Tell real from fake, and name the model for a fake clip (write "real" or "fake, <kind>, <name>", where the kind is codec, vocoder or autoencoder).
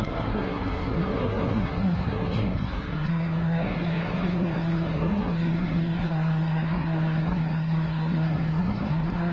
fake, codec, SNAC